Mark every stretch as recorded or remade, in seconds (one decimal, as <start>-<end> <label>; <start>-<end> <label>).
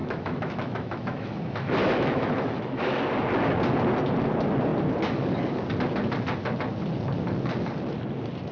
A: 0.0-3.0 remade; 3.0-8.5 recorded